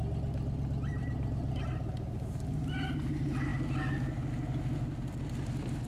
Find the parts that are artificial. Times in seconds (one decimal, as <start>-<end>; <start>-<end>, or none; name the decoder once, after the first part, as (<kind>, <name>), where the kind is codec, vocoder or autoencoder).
0.9-1.6 (vocoder, BigVGAN v2)